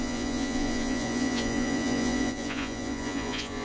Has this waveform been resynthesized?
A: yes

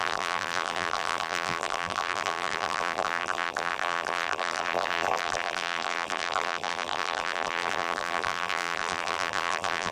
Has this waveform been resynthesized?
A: yes